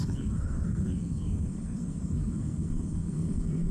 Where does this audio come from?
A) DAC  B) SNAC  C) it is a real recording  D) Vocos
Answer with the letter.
B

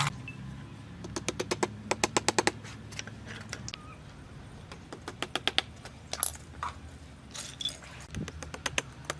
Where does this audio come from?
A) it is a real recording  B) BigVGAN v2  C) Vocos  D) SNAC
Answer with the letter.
A